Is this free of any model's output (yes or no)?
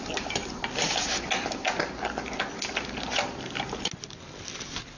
yes